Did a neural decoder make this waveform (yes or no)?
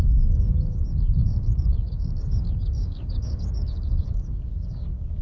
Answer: yes